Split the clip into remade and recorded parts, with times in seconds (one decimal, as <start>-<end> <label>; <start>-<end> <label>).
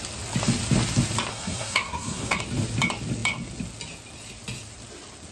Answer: 0.0-1.3 recorded; 1.3-2.4 remade; 2.4-5.3 recorded